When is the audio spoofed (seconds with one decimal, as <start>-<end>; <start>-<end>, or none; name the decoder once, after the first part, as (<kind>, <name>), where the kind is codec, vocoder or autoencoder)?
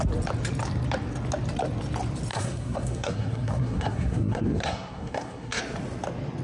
2.3-5.6 (codec, SNAC)